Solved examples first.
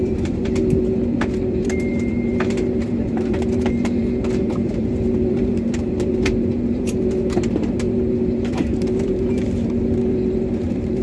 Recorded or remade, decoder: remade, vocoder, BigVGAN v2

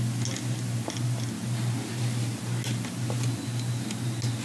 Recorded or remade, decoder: recorded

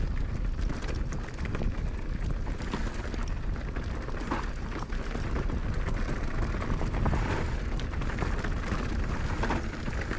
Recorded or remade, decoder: recorded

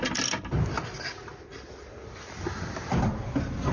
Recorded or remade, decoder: recorded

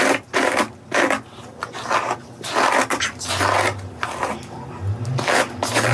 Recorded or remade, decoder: recorded